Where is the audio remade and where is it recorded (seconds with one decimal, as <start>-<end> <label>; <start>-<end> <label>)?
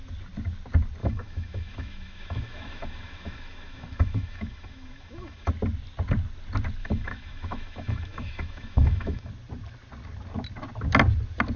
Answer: 0.0-1.0 recorded; 1.0-5.5 remade; 5.5-6.8 recorded; 6.8-9.3 remade; 9.3-11.6 recorded